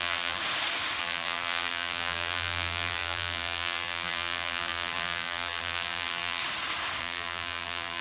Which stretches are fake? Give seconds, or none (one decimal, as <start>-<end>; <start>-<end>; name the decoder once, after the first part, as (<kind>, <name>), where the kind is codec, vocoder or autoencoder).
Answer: 0.0-0.4 (vocoder, BigVGAN v2); 1.0-6.4; 7.0-8.0